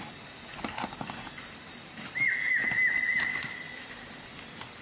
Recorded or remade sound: recorded